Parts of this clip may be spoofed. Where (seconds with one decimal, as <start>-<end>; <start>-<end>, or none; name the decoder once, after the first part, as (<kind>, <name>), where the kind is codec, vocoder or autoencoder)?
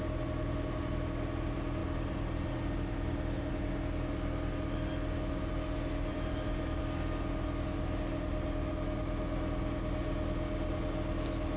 6.1-6.8 (vocoder, BigVGAN v2)